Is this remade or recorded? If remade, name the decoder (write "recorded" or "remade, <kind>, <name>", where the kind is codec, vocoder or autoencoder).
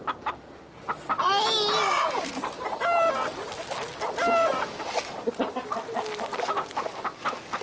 recorded